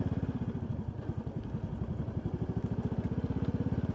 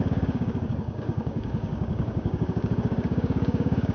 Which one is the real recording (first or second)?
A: first